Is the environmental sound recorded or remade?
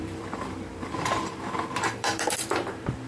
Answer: remade